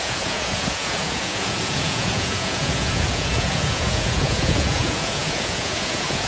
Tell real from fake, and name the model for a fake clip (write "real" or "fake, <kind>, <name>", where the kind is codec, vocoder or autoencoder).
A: fake, vocoder, Vocos